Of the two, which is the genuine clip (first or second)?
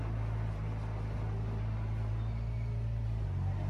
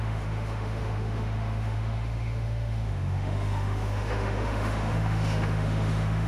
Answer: first